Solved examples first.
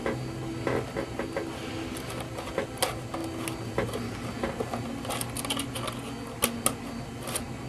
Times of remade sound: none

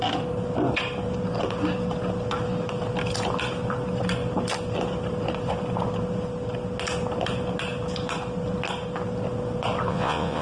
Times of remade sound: 9.9-10.4 (vocoder, Vocos)

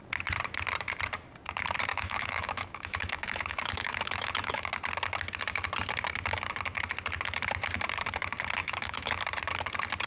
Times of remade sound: 1.9-4.7 (autoencoder, DAC-VAE); 8.6-9.2

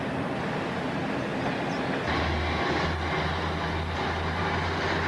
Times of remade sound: none

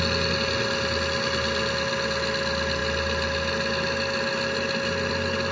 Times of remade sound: none

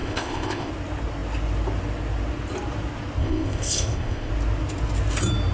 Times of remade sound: 0.0-0.7 (codec, ZipCodec); 3.2-4.3

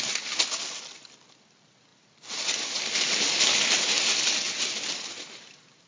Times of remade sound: none